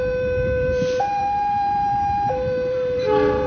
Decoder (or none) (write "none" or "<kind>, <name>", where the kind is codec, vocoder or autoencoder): vocoder, BigVGAN v2